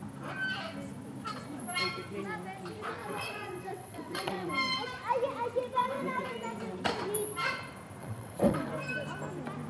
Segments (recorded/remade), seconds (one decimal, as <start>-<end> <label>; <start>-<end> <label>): 0.0-3.0 recorded; 3.0-4.5 remade; 4.5-5.8 recorded; 5.8-6.3 remade; 6.3-8.0 recorded; 8.0-8.7 remade; 8.7-9.7 recorded